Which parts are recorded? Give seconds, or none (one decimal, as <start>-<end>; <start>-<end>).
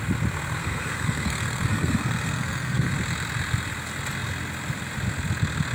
0.0-0.6; 2.9-5.7